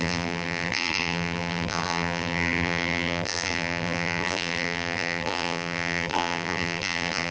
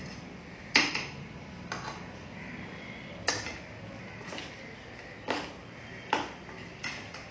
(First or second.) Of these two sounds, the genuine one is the second